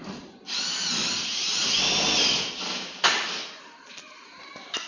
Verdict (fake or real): real